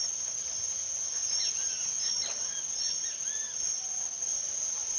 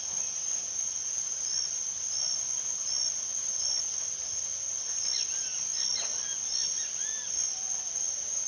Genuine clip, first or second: second